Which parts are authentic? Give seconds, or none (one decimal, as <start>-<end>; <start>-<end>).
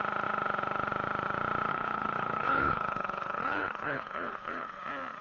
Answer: 0.0-1.7; 4.8-5.2